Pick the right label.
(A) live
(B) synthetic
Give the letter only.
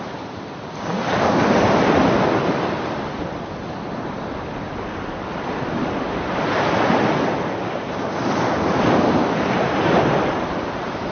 A